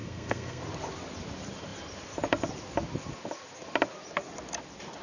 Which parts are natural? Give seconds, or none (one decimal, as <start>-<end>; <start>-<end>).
0.6-5.0